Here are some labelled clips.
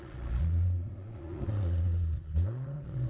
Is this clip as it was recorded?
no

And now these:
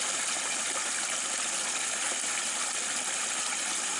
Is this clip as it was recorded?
yes